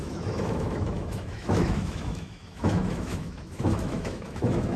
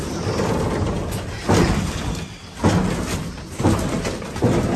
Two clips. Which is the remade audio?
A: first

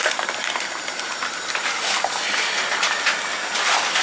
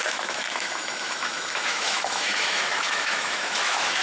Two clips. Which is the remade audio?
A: second